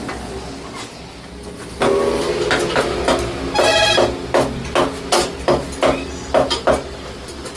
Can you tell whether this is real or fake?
real